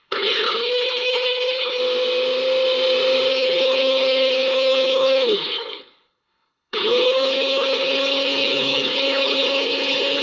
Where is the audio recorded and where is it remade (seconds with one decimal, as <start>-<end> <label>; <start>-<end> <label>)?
0.0-1.8 remade; 1.8-3.3 recorded; 3.3-10.2 remade